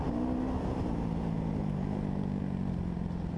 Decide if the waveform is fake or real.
real